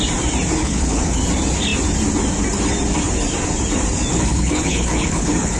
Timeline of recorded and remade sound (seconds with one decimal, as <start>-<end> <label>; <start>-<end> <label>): 0.0-0.6 recorded; 0.6-1.2 remade; 1.2-4.1 recorded; 4.1-5.6 remade

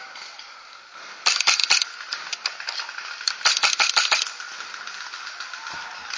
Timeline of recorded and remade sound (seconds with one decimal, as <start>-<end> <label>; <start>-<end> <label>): 0.0-6.2 recorded

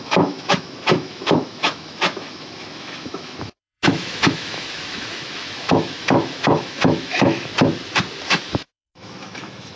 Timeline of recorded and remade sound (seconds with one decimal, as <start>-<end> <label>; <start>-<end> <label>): 0.0-7.5 remade; 7.5-8.2 recorded; 8.2-9.8 remade